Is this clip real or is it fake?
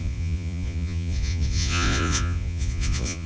fake